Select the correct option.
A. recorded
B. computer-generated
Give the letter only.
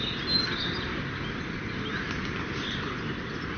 A